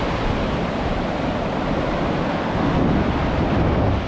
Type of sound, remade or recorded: recorded